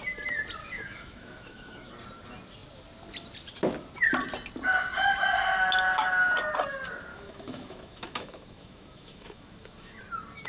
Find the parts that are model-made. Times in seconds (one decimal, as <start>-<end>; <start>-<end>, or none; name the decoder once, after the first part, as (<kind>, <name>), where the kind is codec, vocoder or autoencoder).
0.6-1.9 (autoencoder, DAC-VAE); 7.1-10.0